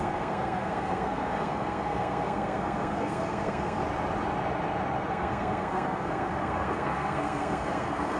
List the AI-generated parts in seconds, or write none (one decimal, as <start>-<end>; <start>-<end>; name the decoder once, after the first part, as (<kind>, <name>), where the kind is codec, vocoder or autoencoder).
0.0-3.8 (codec, SNAC); 5.1-8.2